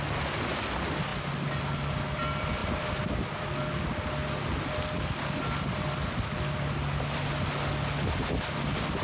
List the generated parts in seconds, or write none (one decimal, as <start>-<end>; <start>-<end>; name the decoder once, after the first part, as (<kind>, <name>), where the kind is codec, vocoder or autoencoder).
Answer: none